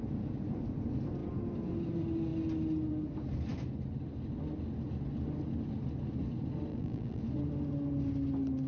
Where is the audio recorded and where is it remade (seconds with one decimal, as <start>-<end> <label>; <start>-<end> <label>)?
0.0-6.7 recorded; 6.7-7.2 remade; 7.2-8.7 recorded